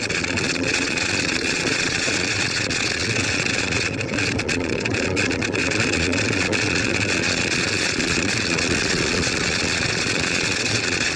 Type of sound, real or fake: fake